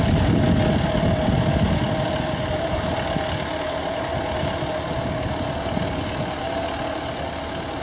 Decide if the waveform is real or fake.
real